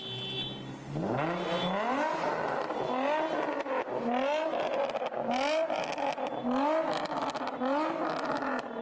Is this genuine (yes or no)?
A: yes